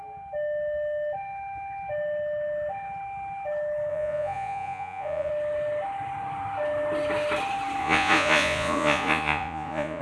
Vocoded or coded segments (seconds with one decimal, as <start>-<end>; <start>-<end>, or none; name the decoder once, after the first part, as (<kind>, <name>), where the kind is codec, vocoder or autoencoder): 3.9-5.3 (vocoder, Vocos); 7.8-10.0